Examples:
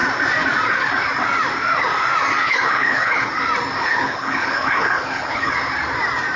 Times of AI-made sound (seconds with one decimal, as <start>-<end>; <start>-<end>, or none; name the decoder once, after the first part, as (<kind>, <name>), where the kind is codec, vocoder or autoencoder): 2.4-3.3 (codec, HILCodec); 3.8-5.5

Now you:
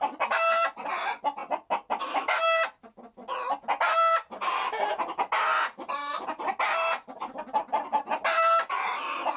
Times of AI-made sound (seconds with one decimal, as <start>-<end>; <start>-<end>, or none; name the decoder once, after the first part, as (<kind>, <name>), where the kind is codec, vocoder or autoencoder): none

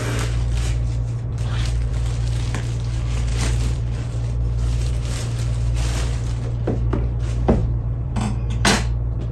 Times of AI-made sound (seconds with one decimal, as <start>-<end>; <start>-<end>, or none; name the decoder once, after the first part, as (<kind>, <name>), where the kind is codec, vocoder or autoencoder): 1.3-1.9 (vocoder, BigVGAN v2); 3.3-4.9; 7.6-8.1

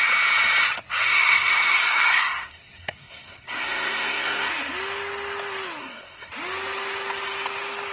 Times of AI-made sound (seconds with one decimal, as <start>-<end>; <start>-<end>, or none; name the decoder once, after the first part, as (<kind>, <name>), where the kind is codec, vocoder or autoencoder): 1.0-4.5 (codec, SNAC); 5.8-6.3

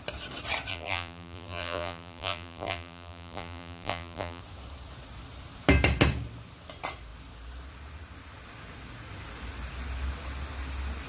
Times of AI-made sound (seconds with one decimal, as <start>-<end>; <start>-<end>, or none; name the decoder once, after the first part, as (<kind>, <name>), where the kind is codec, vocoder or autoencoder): 0.7-4.4 (vocoder, BigVGAN v2)

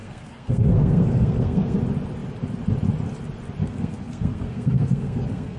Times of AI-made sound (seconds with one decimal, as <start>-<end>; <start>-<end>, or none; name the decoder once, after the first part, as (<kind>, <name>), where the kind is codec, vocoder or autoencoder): 0.0-1.8 (codec, SNAC); 3.6-5.6

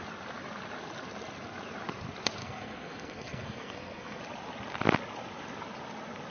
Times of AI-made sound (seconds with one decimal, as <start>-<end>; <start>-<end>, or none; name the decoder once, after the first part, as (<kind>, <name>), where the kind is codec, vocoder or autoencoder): 2.4-4.2 (codec, SNAC)

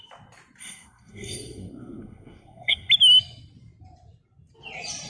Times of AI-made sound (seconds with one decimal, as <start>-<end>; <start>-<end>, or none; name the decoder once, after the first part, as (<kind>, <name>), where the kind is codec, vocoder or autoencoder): 0.6-2.9 (codec, SNAC)